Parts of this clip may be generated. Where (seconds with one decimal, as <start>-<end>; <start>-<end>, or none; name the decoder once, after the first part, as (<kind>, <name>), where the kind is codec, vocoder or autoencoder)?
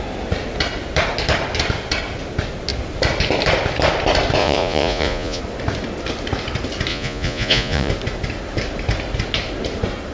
4.4-5.4 (vocoder, Vocos); 6.9-7.9